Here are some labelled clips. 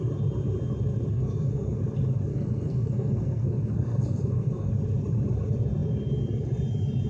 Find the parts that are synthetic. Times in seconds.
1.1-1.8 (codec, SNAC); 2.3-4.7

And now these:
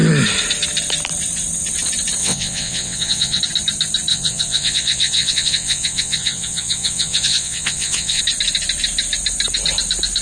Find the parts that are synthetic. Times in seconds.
2.2-3.4 (vocoder, WaveNeXt); 4.1-8.2